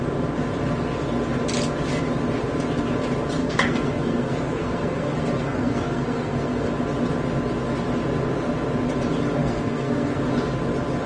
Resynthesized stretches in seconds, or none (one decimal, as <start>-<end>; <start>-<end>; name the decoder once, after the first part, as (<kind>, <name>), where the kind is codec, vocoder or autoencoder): 3.4-6.7 (codec, SNAC); 9.4-10.2